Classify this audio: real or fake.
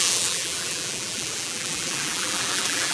fake